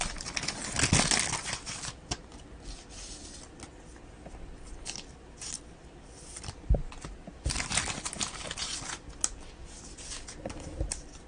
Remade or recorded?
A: recorded